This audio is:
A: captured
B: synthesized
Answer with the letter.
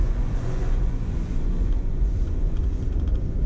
B